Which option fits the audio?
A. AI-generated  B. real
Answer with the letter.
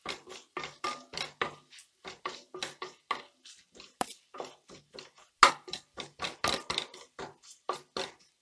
B